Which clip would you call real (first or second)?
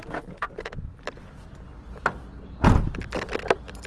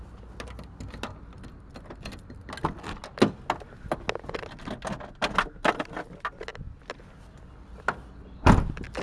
second